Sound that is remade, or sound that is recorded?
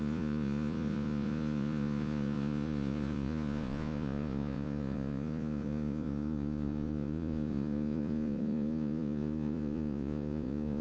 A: remade